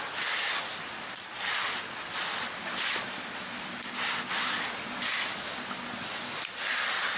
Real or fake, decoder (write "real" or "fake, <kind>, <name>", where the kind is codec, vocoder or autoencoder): real